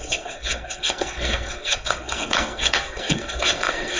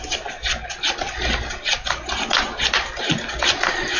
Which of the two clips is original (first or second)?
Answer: second